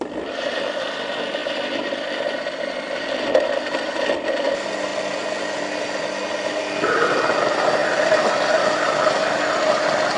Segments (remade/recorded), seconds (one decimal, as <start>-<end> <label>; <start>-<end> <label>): 0.0-7.8 recorded; 7.8-10.2 remade